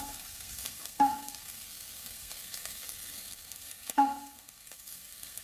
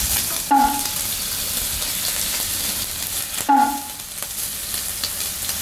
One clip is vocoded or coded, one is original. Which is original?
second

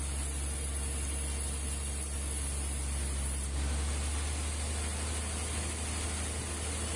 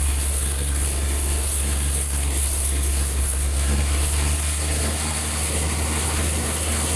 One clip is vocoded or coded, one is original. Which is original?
first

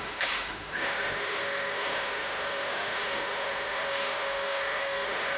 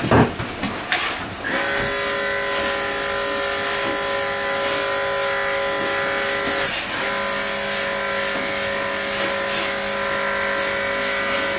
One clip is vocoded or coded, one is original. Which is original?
second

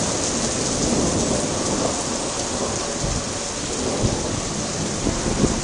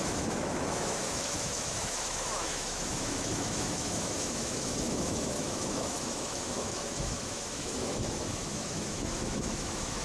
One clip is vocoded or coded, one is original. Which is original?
first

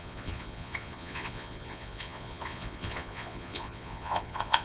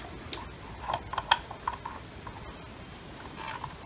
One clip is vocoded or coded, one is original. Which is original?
second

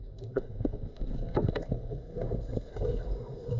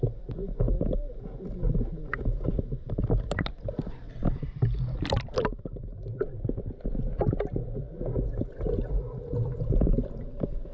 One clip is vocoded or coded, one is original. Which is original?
second